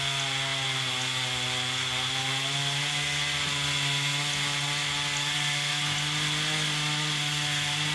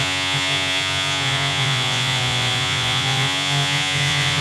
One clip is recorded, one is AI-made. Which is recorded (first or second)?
first